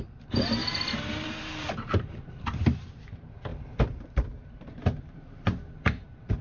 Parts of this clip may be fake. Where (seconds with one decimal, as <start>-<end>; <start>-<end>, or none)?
0.0-0.6; 1.1-6.4